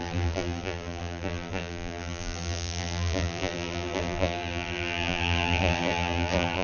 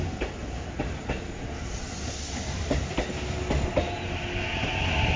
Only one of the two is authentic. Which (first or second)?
second